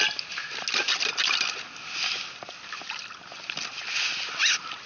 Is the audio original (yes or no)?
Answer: yes